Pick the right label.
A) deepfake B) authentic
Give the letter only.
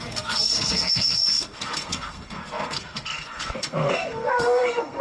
A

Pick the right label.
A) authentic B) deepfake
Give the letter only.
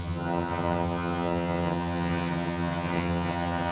B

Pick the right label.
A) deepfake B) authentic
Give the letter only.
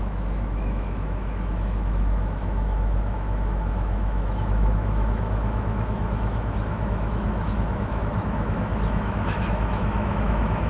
A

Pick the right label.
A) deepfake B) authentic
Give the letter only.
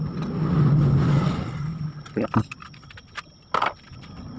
B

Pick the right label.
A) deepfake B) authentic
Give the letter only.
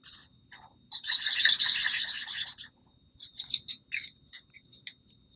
B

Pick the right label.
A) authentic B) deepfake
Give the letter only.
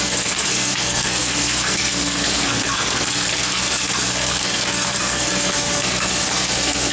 B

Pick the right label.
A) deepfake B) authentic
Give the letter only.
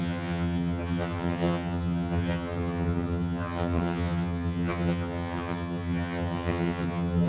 A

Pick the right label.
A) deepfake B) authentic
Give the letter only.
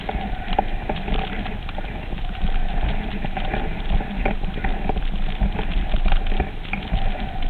B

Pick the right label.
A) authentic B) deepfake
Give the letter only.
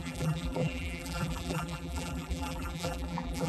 B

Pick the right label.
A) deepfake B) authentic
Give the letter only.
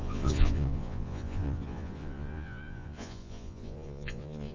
A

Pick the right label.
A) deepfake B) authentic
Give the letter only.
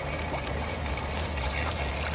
B